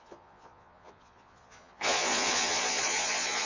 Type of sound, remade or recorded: remade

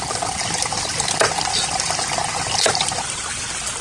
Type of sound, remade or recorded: recorded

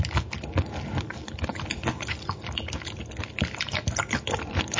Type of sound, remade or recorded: recorded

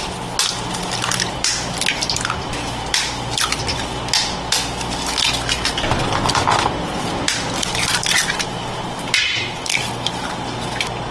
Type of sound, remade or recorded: recorded